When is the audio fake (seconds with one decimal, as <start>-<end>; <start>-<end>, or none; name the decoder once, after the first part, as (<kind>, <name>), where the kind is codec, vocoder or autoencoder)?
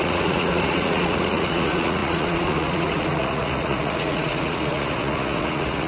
0.0-5.9 (vocoder, Vocos)